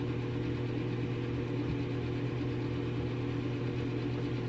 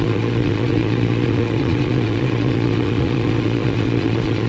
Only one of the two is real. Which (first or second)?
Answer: first